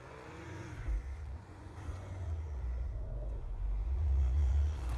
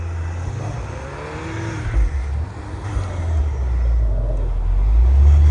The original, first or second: second